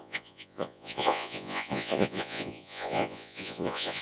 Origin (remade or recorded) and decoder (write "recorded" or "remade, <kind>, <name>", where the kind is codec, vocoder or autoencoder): remade, vocoder, Vocos